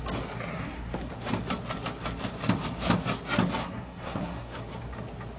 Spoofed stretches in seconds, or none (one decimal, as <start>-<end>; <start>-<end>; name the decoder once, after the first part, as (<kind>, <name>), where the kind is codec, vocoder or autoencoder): 0.5-1.1 (codec, SNAC); 3.6-4.6